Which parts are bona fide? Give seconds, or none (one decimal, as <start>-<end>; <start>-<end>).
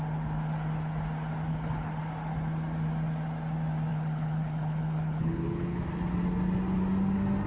0.0-1.5; 2.0-3.9; 5.8-7.5